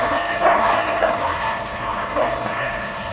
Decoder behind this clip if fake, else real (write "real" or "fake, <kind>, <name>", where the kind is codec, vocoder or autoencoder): fake, codec, SNAC